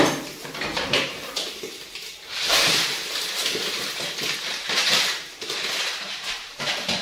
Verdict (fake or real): fake